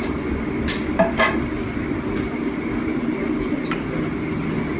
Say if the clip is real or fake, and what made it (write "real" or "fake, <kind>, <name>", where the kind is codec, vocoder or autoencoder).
real